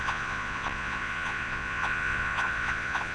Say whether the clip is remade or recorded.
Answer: remade